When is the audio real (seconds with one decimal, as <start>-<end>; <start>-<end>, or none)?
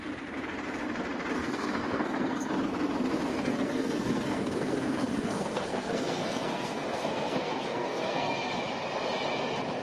0.0-1.4; 2.5-3.3; 8.5-9.8